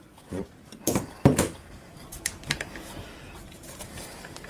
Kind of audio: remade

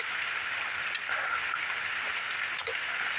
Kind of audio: recorded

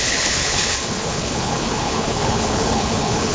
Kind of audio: remade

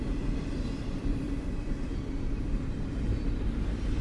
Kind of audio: remade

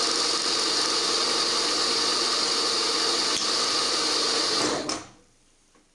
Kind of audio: recorded